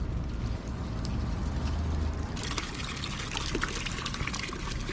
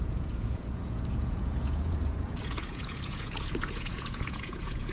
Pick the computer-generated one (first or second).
second